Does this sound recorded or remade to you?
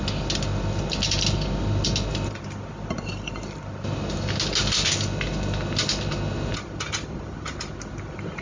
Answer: recorded